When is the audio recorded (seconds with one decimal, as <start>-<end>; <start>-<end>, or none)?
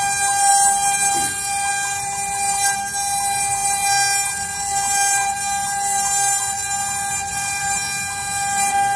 0.0-9.0